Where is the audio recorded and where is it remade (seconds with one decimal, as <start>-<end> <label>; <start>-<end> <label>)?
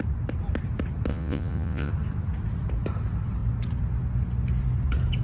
0.0-1.1 recorded; 1.1-1.9 remade; 1.9-5.2 recorded